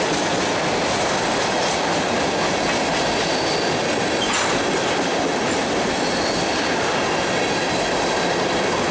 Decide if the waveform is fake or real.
real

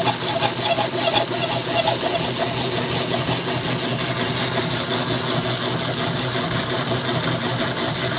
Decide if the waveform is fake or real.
real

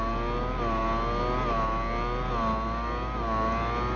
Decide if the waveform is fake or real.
real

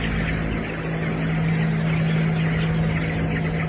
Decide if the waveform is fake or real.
real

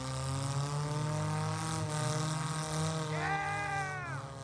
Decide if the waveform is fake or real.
real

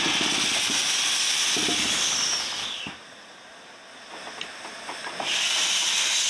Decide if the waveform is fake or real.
real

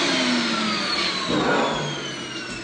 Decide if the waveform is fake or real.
real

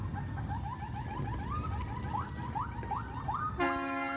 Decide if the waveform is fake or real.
real